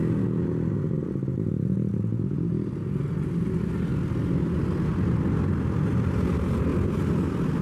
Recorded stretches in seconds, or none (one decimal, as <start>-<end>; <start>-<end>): 0.0-7.6